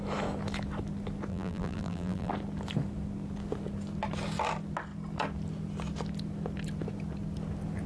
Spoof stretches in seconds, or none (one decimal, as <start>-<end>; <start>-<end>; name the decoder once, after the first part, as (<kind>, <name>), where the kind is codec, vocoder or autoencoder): 1.3-2.3 (vocoder, BigVGAN v2)